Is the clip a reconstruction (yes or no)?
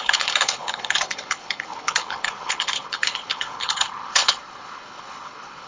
yes